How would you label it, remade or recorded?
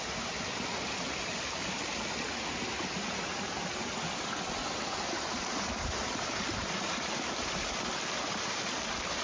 recorded